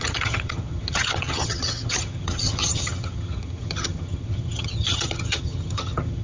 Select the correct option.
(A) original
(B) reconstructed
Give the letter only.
B